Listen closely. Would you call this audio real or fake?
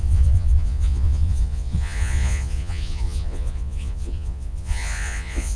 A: fake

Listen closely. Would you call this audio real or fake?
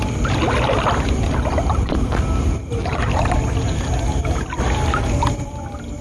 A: real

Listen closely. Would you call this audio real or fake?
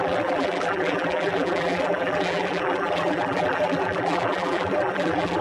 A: fake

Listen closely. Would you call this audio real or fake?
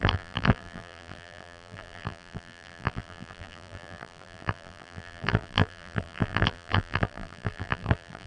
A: fake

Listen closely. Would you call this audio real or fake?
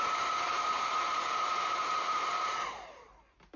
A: fake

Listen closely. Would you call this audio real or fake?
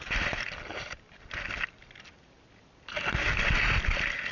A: real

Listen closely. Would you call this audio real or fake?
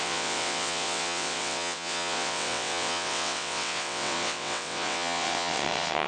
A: fake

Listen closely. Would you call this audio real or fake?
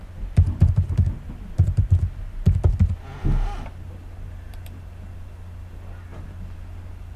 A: real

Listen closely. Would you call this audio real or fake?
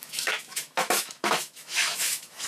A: fake